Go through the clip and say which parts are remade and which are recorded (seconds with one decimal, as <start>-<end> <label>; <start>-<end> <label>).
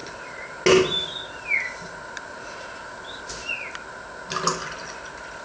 0.0-5.4 recorded